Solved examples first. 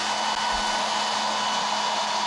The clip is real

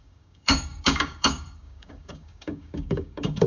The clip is fake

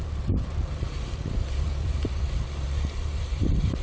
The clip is fake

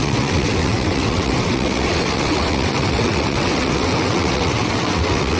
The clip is fake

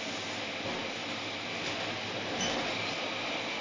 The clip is real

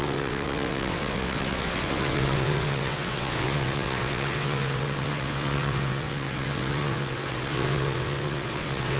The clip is fake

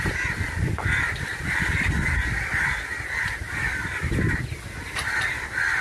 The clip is real